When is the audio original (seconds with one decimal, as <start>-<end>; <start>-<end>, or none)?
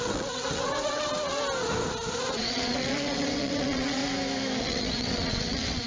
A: 1.1-2.3; 4.0-4.6